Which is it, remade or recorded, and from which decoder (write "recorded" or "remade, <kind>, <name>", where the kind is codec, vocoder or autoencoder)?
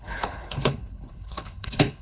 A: remade, codec, HILCodec